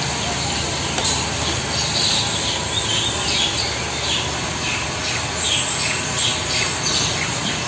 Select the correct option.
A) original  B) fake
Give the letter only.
A